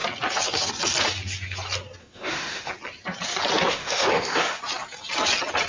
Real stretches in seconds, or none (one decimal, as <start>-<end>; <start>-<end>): 0.0-2.0; 2.7-3.7; 4.6-5.7